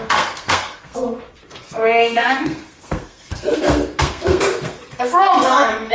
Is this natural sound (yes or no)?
no